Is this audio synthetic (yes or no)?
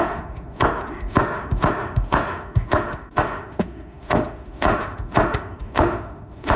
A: yes